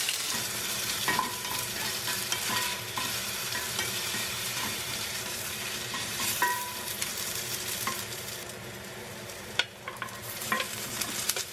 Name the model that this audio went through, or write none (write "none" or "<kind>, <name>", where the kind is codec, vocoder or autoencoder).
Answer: vocoder, BigVGAN v2